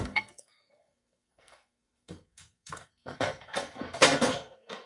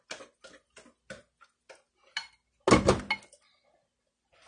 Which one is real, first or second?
second